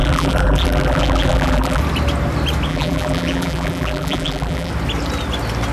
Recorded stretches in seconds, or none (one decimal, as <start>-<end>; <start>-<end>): 1.8-2.7; 4.7-5.7